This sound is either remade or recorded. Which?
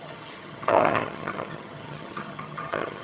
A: remade